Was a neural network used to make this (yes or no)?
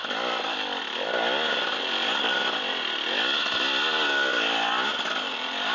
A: no